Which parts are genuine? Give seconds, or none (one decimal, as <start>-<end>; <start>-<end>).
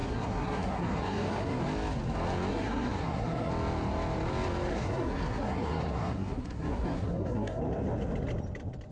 1.6-2.5; 3.5-4.7; 7.6-8.9